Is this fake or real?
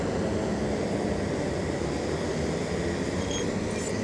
real